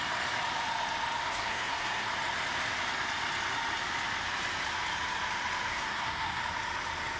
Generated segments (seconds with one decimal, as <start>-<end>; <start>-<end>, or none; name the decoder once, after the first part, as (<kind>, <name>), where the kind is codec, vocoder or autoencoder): 1.3-2.1 (codec, SNAC); 5.7-6.4